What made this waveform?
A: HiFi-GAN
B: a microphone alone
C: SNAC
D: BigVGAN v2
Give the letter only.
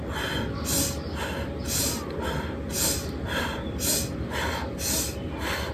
B